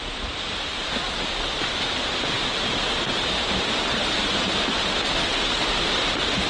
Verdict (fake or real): fake